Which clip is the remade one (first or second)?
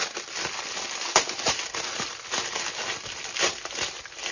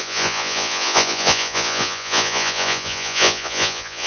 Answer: second